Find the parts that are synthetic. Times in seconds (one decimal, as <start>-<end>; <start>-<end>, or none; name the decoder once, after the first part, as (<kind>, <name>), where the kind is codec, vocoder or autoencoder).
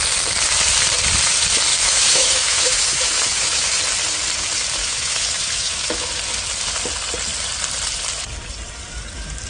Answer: 1.7-3.8 (autoencoder, DAC-VAE); 4.8-6.1